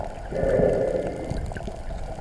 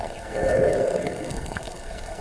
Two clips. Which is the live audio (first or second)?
first